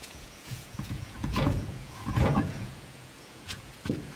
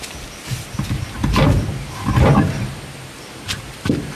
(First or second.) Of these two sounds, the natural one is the second